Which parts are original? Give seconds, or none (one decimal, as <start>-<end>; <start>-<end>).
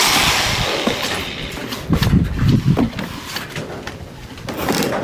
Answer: 0.0-5.0